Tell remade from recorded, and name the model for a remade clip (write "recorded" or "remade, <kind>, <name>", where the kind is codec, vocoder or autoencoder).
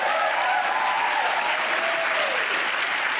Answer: recorded